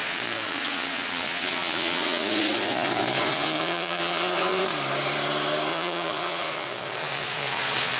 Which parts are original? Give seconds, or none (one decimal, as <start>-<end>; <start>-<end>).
4.6-5.7